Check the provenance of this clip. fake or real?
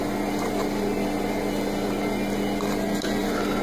real